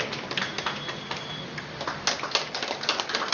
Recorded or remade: recorded